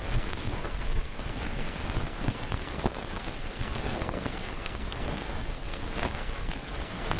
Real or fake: fake